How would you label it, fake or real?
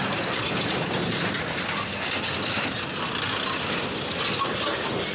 real